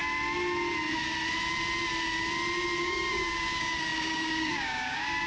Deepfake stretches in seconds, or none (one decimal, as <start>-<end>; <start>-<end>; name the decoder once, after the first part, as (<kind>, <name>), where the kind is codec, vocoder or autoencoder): 2.8-5.3 (codec, DAC)